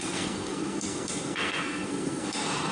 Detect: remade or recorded remade